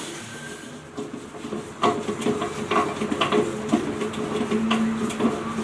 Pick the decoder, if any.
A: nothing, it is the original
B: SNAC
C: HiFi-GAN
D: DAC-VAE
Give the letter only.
A